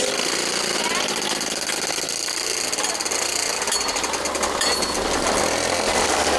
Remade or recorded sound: recorded